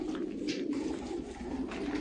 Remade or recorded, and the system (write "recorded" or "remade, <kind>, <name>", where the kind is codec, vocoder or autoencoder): remade, vocoder, BigVGAN v2